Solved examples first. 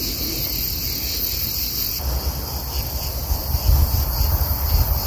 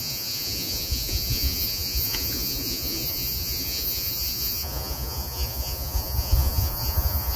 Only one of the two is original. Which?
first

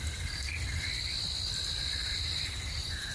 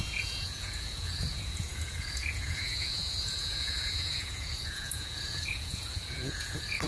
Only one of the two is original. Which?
first